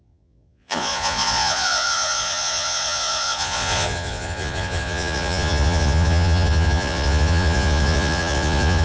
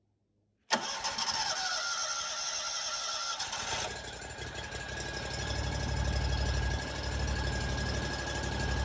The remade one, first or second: first